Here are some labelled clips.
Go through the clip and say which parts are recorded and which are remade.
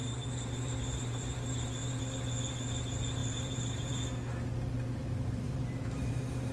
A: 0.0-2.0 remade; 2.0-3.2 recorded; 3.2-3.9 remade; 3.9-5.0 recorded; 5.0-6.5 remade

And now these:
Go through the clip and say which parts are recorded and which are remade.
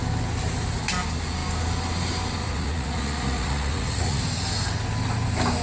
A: 0.0-2.4 recorded; 2.4-4.2 remade; 4.2-5.6 recorded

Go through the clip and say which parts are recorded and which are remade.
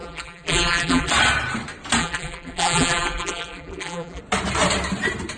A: 0.0-1.1 remade; 1.1-2.0 recorded; 2.0-4.2 remade; 4.2-5.4 recorded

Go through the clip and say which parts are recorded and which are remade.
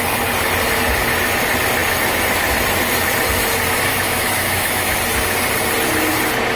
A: 0.0-3.9 recorded; 3.9-5.0 remade; 5.0-6.6 recorded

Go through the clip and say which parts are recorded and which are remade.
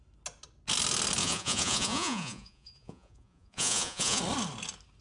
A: 0.0-1.2 recorded; 1.2-4.2 remade; 4.2-5.0 recorded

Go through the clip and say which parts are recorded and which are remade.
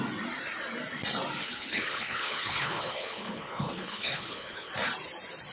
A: 0.0-1.4 recorded; 1.4-4.7 remade; 4.7-5.5 recorded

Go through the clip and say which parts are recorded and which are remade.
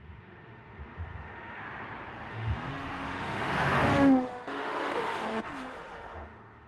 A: 0.0-1.6 remade; 1.6-2.3 recorded; 2.3-6.7 remade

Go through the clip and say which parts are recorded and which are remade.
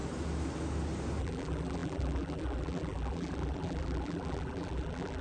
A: 0.0-1.2 recorded; 1.2-5.2 remade